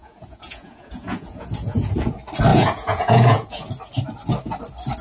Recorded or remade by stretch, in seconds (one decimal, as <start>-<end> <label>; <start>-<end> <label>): 0.0-1.9 remade; 1.9-2.5 recorded; 2.5-3.7 remade; 3.7-5.0 recorded

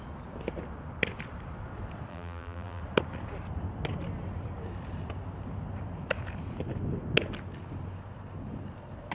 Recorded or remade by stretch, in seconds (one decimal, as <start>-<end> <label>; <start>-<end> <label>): 0.0-2.1 recorded; 2.1-2.8 remade; 2.8-9.1 recorded